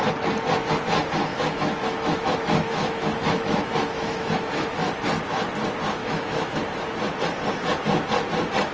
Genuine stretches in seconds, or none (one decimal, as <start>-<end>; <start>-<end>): 0.0-1.3; 4.9-6.0; 6.6-8.7